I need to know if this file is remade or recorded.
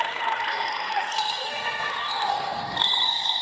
remade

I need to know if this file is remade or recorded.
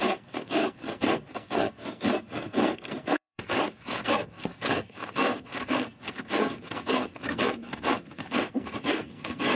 remade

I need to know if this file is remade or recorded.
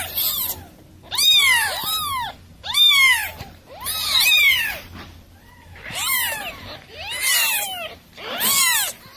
remade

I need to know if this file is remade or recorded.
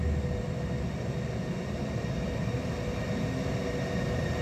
recorded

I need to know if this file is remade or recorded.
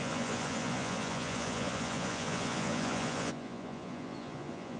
remade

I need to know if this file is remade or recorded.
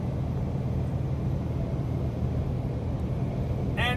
recorded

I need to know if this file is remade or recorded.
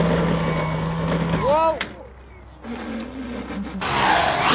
recorded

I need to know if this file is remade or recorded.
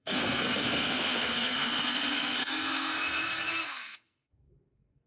remade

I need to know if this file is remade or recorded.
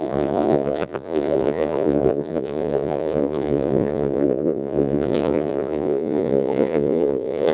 remade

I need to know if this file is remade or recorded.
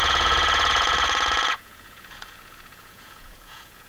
remade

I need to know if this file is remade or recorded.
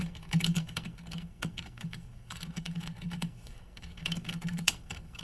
remade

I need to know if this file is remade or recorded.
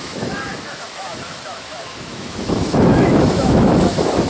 remade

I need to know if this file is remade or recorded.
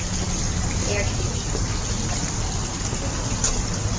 recorded